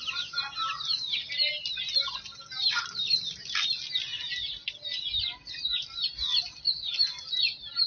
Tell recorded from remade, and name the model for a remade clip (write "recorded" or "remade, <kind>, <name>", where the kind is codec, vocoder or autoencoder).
recorded